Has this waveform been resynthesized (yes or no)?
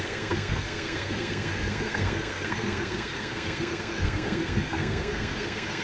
yes